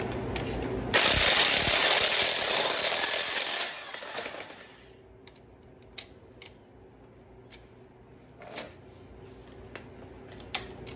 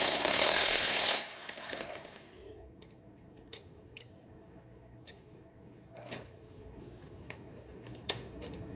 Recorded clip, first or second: first